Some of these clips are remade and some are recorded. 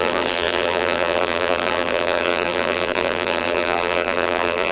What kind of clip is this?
remade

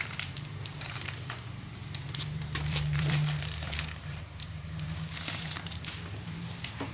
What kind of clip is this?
remade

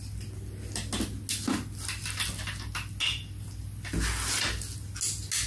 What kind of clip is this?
recorded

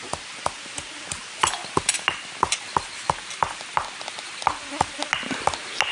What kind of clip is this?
recorded